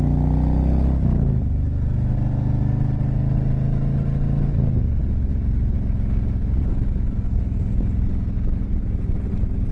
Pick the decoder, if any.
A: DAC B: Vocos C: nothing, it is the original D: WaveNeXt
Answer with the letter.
C